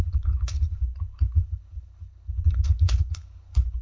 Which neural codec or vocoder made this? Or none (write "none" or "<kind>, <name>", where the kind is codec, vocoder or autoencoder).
codec, HILCodec